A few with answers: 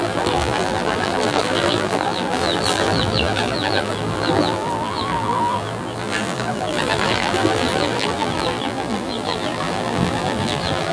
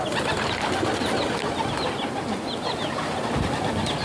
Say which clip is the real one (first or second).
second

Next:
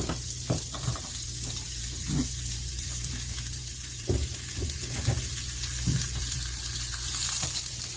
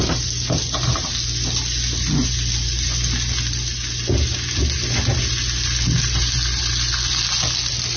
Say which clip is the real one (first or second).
second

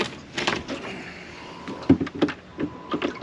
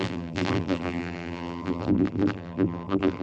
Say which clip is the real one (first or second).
first